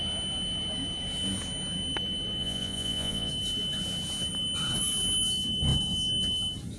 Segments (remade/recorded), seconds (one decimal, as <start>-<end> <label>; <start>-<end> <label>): 0.0-2.4 recorded; 2.4-3.3 remade; 3.3-6.8 recorded